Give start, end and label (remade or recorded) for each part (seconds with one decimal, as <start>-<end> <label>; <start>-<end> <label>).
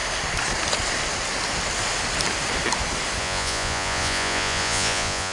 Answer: 0.0-3.2 recorded; 3.2-5.3 remade